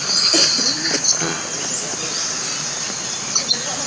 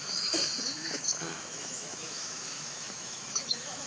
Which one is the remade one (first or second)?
second